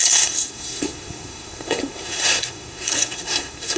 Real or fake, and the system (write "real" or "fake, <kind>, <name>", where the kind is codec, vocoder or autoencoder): fake, codec, SNAC